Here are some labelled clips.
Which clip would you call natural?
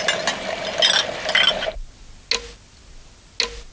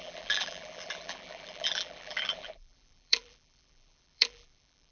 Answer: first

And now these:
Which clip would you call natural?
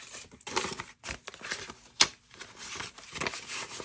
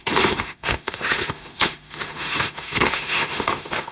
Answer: first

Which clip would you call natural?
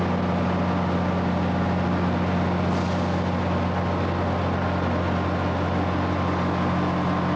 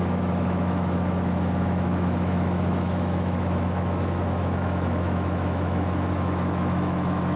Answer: first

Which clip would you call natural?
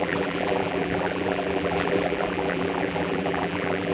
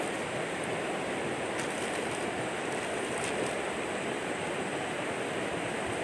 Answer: second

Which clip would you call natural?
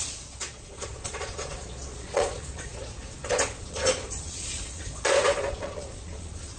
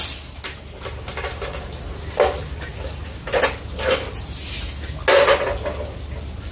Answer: second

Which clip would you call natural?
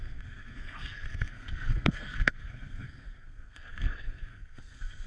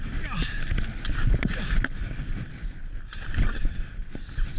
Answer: second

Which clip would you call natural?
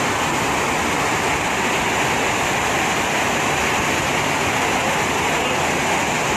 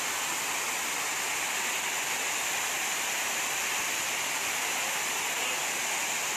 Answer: first